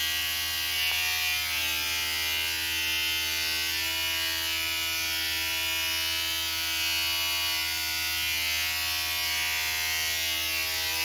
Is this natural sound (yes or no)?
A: yes